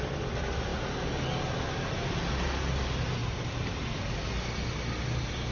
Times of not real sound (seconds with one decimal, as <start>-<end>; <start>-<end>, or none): none